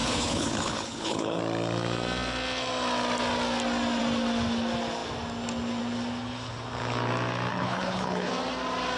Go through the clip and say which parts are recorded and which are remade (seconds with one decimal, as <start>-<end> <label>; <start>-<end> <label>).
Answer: 0.0-1.4 remade; 1.4-7.5 recorded; 7.5-8.3 remade; 8.3-9.0 recorded